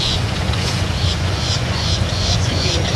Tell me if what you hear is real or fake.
fake